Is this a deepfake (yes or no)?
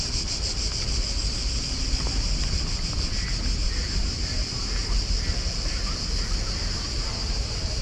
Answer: no